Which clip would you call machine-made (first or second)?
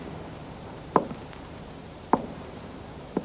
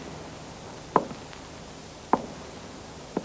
first